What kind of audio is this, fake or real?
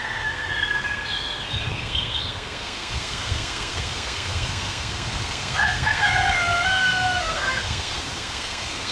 fake